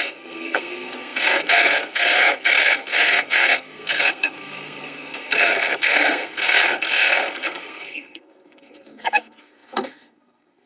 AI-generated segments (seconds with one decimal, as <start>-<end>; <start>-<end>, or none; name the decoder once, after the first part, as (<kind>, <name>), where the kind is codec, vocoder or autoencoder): 0.0-10.7 (codec, SNAC)